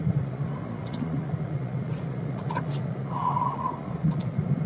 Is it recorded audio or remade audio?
remade